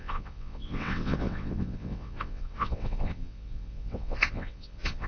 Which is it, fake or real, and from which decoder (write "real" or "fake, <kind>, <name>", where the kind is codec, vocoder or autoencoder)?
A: fake, vocoder, WaveNeXt